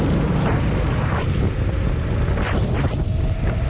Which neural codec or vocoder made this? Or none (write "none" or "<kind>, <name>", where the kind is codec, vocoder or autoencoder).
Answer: none